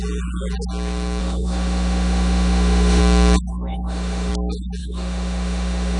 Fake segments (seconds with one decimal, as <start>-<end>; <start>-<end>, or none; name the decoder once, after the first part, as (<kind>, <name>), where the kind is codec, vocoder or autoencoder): 1.2-3.0 (autoencoder, DAC-VAE); 3.5-4.3; 4.8-6.0